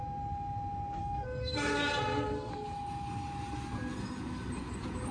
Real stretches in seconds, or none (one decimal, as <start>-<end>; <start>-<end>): 0.0-1.0; 2.5-5.1